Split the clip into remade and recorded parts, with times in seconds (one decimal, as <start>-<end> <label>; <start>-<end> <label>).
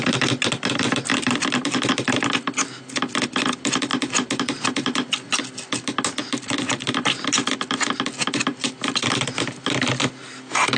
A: 0.0-10.8 recorded